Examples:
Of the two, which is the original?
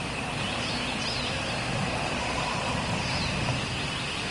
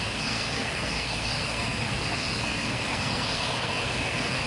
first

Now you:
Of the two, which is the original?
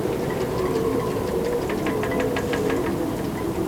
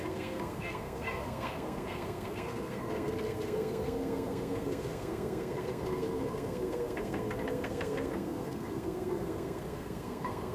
first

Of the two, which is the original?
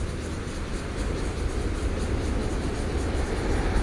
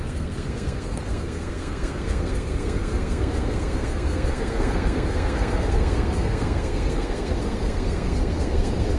first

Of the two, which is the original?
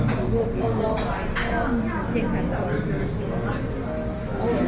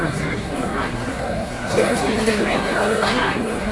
first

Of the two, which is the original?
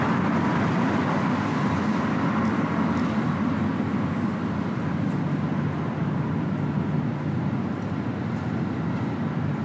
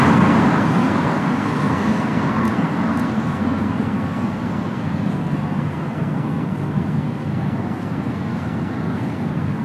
first